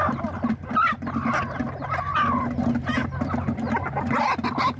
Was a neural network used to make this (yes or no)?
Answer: no